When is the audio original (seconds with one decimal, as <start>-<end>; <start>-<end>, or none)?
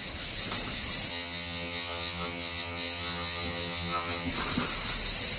0.0-1.1; 4.3-5.4